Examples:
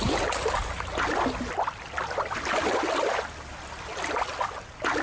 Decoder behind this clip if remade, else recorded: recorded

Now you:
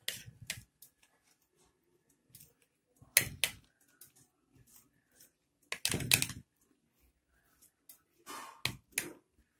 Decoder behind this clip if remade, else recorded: recorded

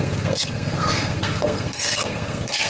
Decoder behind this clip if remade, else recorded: remade, codec, SNAC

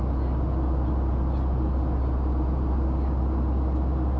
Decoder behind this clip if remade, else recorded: recorded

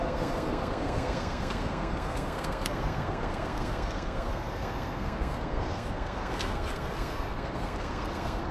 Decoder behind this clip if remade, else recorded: remade, codec, SNAC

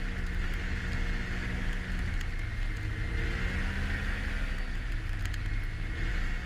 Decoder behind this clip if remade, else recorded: recorded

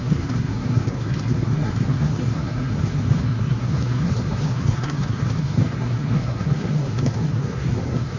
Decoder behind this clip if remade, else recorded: remade, codec, SNAC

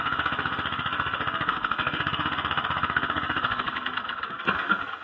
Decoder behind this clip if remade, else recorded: remade, codec, SNAC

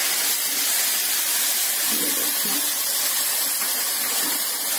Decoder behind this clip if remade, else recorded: recorded